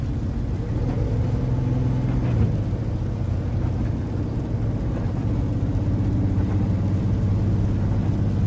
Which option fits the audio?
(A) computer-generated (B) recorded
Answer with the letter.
B